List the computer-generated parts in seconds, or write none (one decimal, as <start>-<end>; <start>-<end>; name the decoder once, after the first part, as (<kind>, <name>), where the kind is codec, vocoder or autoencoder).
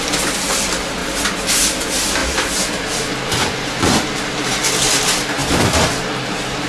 3.4-4.0 (vocoder, Vocos)